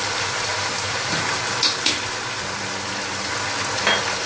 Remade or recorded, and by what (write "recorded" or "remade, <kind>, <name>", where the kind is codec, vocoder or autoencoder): recorded